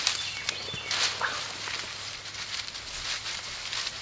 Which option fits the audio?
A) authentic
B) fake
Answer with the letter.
A